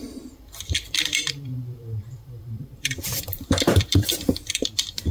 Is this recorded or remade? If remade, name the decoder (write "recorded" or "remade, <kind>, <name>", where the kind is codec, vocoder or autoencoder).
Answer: remade, vocoder, BigVGAN v2